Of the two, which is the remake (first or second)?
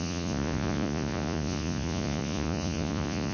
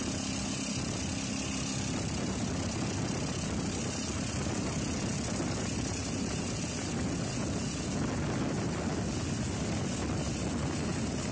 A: first